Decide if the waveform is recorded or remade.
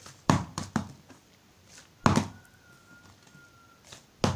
recorded